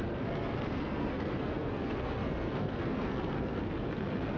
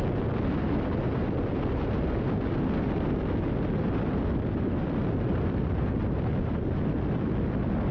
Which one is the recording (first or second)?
second